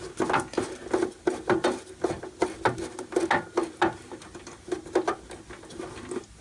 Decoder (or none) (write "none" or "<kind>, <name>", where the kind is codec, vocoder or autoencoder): none